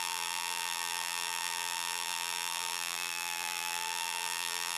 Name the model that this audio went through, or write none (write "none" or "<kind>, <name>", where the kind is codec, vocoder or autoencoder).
vocoder, BigVGAN v2